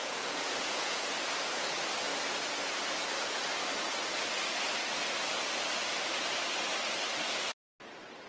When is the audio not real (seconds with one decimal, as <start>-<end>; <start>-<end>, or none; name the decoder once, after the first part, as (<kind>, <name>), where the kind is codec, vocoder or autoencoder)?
0.0-1.1 (vocoder, Vocos)